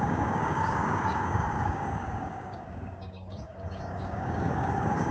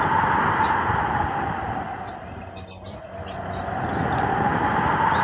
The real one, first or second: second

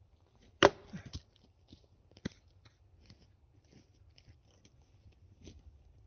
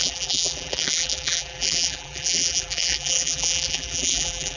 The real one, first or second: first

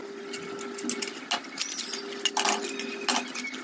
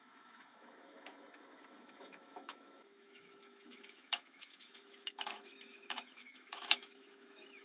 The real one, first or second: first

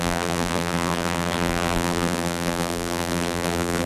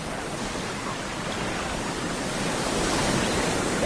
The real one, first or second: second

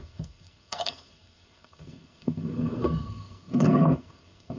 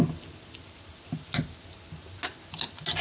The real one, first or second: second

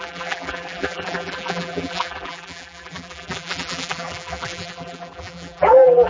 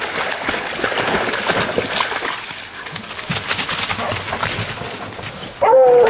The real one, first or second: second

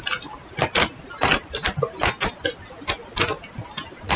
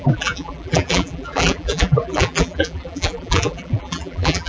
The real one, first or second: first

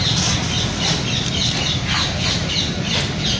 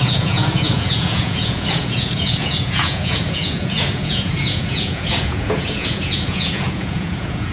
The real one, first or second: first